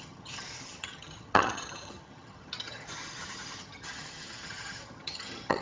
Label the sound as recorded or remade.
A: remade